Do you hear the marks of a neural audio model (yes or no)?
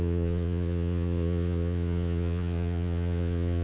yes